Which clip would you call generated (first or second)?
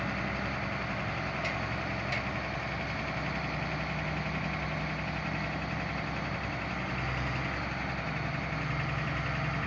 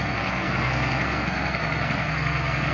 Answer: second